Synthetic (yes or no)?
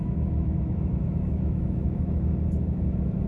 yes